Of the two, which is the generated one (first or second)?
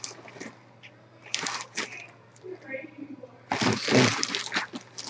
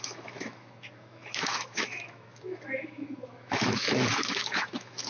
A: second